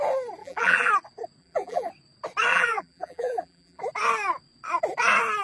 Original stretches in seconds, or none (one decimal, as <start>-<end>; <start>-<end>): 0.0-0.4; 0.9-1.4; 1.9-2.5; 3.8-5.4